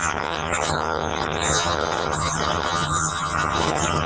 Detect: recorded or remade remade